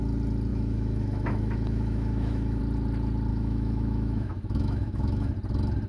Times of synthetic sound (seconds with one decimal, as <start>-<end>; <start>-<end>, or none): 0.5-2.6; 3.3-5.3